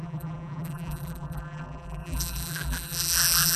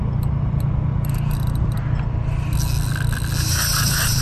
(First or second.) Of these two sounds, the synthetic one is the first